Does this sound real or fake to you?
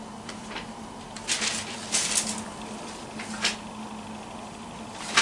real